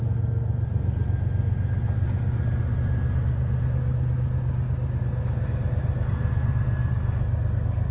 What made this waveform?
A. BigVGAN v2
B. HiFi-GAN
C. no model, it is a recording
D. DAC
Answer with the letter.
C